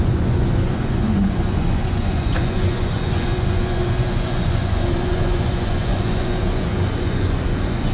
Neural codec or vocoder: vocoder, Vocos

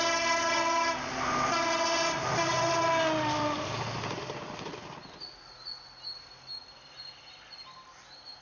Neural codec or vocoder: none